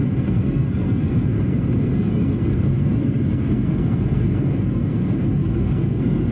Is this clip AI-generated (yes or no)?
yes